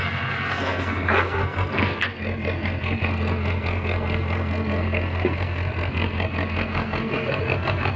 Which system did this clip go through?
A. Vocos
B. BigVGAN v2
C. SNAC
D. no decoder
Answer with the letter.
C